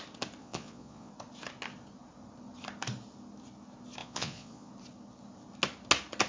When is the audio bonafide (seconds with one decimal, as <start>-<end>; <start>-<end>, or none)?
0.0-0.4; 1.1-4.0; 4.7-6.3